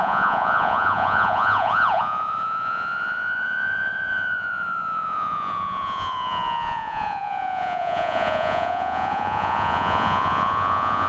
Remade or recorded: remade